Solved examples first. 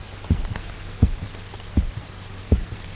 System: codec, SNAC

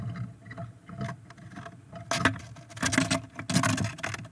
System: none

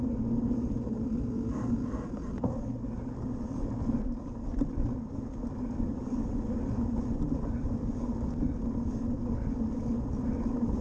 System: none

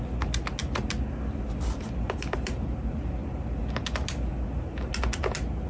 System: none